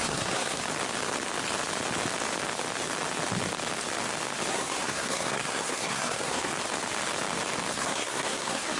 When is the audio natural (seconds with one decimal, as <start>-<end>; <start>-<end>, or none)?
0.6-4.5; 6.5-7.7

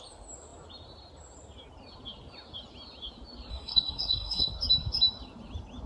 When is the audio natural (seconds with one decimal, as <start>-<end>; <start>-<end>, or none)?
0.0-3.5; 4.5-5.9

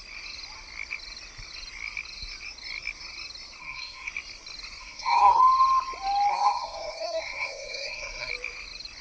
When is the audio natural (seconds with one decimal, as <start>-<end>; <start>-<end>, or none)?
0.0-3.6; 4.1-4.8; 5.4-6.3; 8.3-9.0

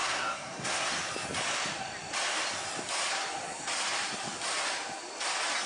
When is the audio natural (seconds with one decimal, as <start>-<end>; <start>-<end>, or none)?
0.9-5.7